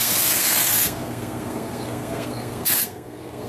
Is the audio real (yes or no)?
no